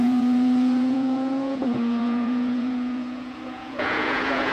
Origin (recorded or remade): remade